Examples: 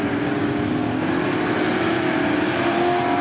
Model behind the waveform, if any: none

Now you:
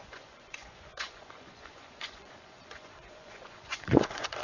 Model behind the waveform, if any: vocoder, Vocos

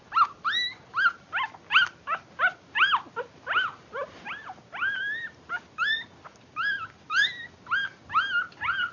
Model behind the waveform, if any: vocoder, BigVGAN v2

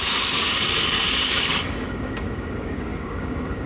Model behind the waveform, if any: codec, DAC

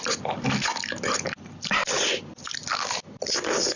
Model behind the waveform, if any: none